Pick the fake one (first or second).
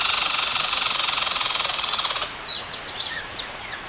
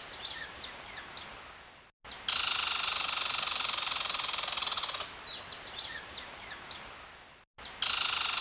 first